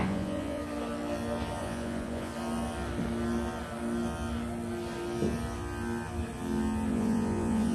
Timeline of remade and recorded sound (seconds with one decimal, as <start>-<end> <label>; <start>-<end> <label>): 0.0-0.6 remade; 0.6-1.6 recorded; 1.6-2.3 remade; 2.3-6.9 recorded; 6.9-7.7 remade